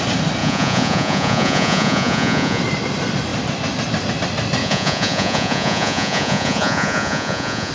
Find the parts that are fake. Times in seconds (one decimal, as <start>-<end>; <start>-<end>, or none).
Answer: 0.4-2.6; 4.6-7.7